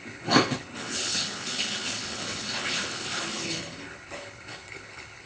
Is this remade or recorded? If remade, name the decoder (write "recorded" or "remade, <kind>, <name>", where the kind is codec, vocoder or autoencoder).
remade, codec, HILCodec